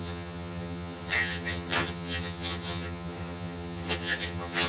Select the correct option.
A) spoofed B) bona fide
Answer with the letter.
A